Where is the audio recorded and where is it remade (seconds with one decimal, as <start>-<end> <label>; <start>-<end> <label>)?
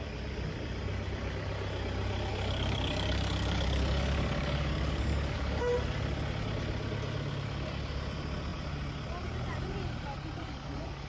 0.0-2.3 recorded; 2.3-5.7 remade; 5.7-10.4 recorded; 10.4-11.1 remade